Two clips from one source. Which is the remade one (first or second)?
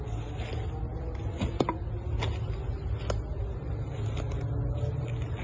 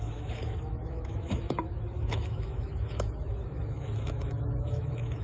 second